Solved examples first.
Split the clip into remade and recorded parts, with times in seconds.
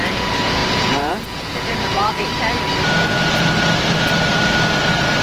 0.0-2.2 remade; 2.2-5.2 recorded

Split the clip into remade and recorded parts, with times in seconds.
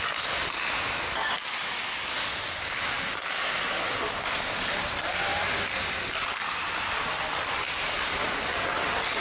0.0-9.2 recorded